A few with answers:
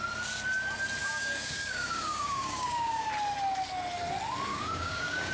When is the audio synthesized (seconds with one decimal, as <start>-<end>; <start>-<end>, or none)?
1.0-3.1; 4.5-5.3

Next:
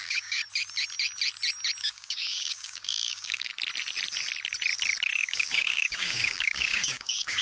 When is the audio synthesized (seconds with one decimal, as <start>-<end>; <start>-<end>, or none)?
0.0-0.4; 1.8-3.5; 5.2-7.4

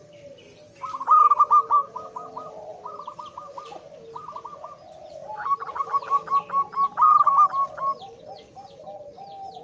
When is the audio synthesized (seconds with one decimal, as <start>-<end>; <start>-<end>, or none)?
none

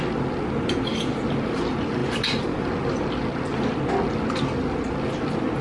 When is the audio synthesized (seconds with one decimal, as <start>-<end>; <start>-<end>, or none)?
none

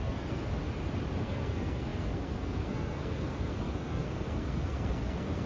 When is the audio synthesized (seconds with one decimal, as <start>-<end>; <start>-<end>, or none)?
0.0-0.6; 1.2-5.5